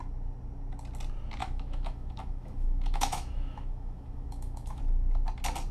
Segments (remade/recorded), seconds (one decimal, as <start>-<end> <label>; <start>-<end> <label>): 0.0-1.4 recorded; 1.4-4.8 remade; 4.8-5.7 recorded

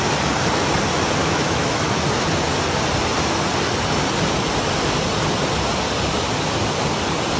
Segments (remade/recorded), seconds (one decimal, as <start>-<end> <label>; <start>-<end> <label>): 0.0-1.2 recorded; 1.2-2.0 remade; 2.0-7.4 recorded